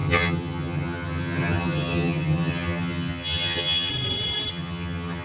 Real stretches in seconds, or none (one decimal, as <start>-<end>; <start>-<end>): 3.9-4.5